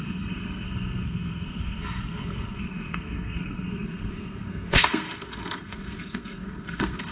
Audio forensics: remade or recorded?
remade